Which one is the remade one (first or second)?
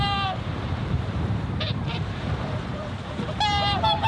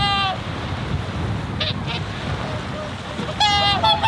first